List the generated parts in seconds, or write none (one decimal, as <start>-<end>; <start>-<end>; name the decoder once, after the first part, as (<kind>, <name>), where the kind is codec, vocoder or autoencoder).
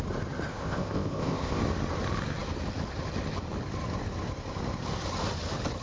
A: 0.5-1.6 (codec, ZipCodec)